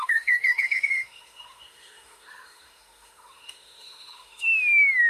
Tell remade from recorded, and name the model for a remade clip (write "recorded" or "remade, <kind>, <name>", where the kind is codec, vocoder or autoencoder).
remade, autoencoder, DAC-VAE